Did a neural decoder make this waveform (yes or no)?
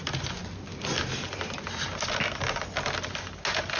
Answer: no